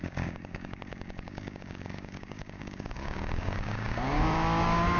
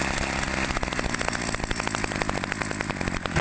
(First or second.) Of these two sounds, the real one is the second